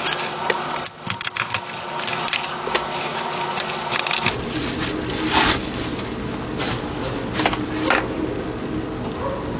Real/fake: real